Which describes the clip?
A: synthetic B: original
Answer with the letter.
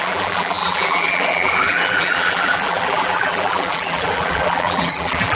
A